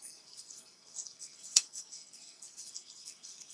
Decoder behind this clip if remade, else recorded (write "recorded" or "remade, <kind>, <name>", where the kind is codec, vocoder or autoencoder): remade, codec, SNAC